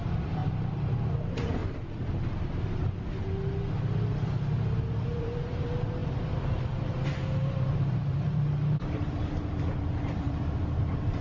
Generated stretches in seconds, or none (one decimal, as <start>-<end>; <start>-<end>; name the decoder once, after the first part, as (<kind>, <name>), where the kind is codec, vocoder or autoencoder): 0.0-0.4 (vocoder, BigVGAN v2); 1.1-1.6; 5.0-11.2

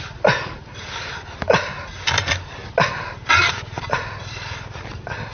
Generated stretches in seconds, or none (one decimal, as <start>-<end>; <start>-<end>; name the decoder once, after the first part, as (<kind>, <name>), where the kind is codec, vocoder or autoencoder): none